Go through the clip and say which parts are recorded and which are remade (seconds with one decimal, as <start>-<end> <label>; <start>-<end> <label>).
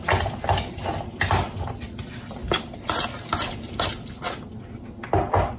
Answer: 0.0-5.6 recorded